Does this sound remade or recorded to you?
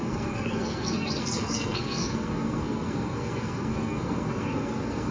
remade